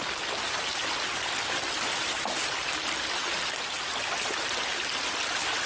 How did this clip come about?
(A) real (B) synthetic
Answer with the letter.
A